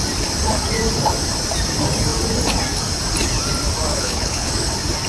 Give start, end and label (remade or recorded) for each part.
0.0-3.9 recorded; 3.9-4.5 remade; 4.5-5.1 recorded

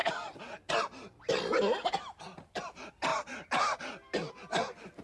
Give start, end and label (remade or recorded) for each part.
0.0-5.0 recorded

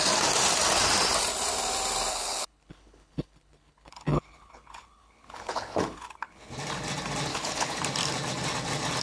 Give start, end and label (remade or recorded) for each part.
0.0-2.1 recorded; 2.1-6.5 remade; 6.5-7.3 recorded; 7.3-7.8 remade; 7.8-9.0 recorded

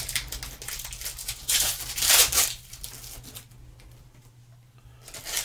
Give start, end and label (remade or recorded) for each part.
0.0-1.2 recorded; 1.2-1.7 remade; 1.7-5.4 recorded